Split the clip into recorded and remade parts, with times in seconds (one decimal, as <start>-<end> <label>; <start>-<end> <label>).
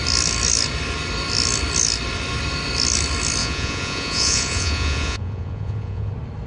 0.0-3.4 recorded; 3.4-6.1 remade; 6.1-6.5 recorded